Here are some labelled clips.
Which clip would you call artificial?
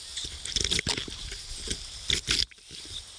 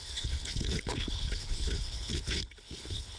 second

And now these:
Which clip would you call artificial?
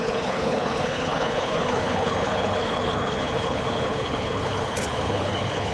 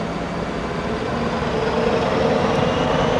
first